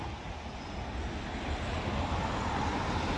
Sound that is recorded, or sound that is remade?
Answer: recorded